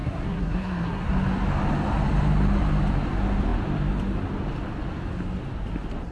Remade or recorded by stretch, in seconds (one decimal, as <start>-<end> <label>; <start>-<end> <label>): 0.0-1.1 remade; 1.1-6.1 recorded